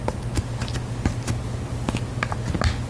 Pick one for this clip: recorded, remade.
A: recorded